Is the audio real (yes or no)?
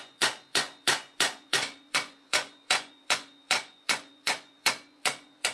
no